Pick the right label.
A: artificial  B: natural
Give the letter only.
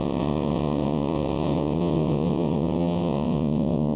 A